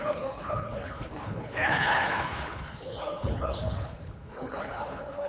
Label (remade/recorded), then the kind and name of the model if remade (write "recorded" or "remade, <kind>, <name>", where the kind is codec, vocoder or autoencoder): remade, codec, HILCodec